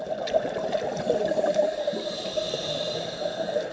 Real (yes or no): no